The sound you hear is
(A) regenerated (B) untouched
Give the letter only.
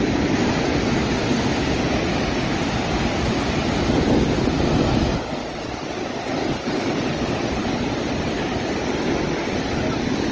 B